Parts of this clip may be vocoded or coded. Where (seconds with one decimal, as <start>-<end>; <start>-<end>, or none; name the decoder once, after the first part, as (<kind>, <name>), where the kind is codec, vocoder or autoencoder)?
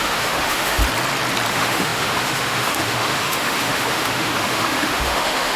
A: 0.0-0.8 (autoencoder, DAC-VAE); 1.5-5.6